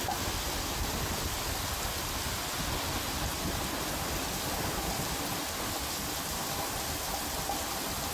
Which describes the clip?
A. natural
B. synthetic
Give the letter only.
A